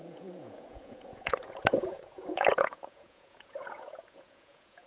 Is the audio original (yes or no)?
no